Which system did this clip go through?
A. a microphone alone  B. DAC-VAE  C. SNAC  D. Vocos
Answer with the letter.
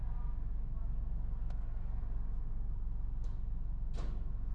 A